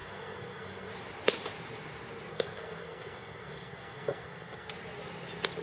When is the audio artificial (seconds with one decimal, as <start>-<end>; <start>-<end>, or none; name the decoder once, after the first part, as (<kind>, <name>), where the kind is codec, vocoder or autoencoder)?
0.0-0.9 (codec, SNAC); 2.3-4.7